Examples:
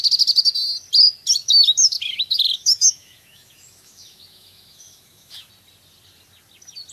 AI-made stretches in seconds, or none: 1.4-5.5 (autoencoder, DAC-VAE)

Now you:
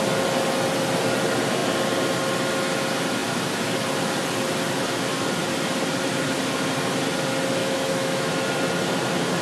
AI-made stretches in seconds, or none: 7.6-8.3 (autoencoder, DAC-VAE)

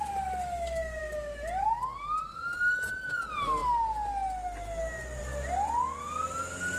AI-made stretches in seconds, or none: none